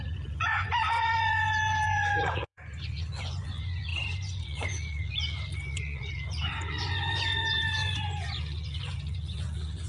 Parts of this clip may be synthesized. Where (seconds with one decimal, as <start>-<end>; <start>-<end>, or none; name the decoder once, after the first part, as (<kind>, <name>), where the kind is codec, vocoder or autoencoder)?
0.0-9.9 (vocoder, Vocos)